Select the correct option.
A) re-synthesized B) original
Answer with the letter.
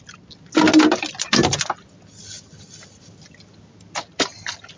B